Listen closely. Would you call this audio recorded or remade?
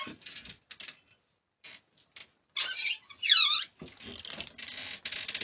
recorded